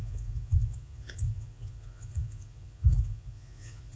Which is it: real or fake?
fake